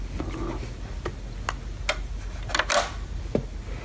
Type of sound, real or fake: real